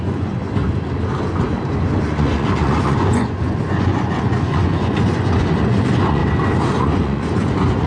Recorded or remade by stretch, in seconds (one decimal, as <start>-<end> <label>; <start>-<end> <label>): 0.0-0.6 remade; 0.6-2.0 recorded; 2.0-6.2 remade; 6.2-6.8 recorded; 6.8-7.9 remade